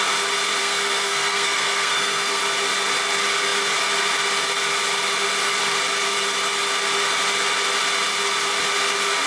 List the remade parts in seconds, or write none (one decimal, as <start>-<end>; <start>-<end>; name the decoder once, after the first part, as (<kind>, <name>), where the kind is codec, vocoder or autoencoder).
0.6-2.4 (codec, SNAC)